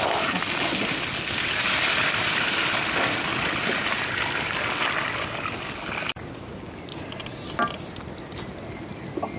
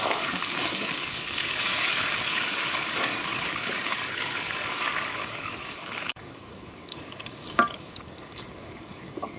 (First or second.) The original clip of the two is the first